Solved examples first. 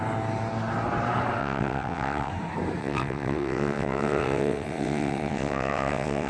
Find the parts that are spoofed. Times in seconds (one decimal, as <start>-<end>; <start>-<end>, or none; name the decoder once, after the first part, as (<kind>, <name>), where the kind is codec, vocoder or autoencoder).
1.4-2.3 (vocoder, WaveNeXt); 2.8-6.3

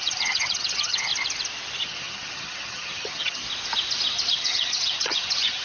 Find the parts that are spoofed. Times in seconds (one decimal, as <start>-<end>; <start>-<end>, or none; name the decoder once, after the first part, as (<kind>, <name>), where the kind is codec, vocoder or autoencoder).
0.0-1.1 (vocoder, HiFi-GAN); 1.8-3.4; 4.3-5.6

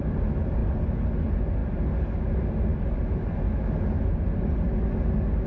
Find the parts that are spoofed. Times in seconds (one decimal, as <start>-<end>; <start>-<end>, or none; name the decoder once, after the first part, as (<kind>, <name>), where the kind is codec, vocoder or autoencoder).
none

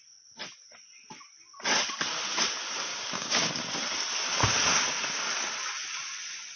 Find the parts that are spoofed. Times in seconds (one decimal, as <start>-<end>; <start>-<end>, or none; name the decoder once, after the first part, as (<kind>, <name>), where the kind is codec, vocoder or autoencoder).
2.9-3.5 (codec, DAC)

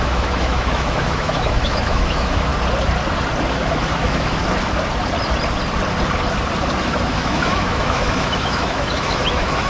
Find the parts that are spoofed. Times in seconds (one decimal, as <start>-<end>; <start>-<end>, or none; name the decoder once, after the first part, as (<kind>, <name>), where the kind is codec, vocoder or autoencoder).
0.0-2.5 (autoencoder, DAC-VAE); 3.5-4.4; 6.8-9.7

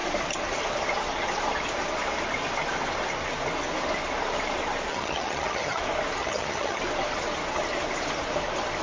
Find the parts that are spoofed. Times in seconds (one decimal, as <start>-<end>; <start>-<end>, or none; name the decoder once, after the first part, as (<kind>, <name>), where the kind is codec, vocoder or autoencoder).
4.9-5.8 (vocoder, HiFi-GAN); 6.2-6.8

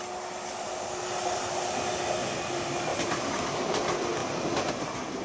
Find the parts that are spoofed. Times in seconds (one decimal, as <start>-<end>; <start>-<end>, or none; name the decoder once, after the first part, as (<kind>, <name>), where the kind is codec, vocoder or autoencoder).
none

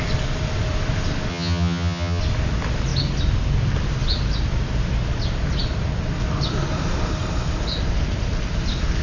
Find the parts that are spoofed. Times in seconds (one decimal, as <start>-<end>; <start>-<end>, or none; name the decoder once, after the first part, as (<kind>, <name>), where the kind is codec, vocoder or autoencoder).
1.3-2.2 (vocoder, HiFi-GAN)